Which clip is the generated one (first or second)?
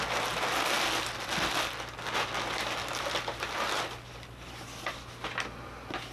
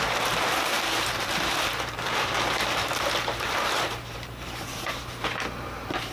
second